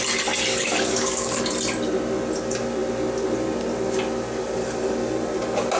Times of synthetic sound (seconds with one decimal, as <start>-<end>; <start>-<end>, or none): 0.5-1.4